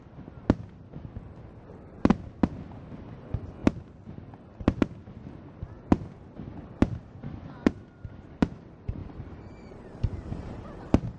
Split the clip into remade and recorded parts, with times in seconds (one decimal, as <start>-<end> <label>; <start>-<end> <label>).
0.0-9.0 recorded; 9.0-10.7 remade; 10.7-11.2 recorded